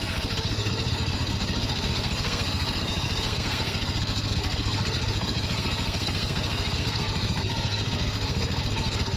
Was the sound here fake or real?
fake